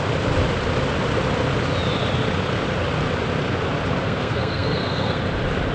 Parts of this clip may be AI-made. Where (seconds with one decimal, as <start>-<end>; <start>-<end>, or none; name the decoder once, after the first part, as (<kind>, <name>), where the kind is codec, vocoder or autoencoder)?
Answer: 4.0-5.2 (codec, SNAC)